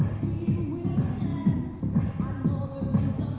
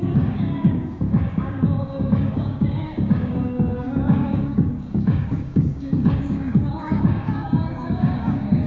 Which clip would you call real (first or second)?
first